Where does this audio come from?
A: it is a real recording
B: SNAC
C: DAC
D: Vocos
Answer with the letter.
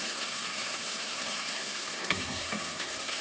B